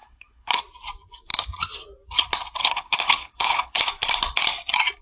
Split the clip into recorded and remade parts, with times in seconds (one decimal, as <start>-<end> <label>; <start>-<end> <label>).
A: 0.0-0.6 remade; 0.6-2.6 recorded; 2.6-3.8 remade; 3.8-5.0 recorded